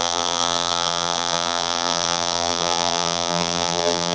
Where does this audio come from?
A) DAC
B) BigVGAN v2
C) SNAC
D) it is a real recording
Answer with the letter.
B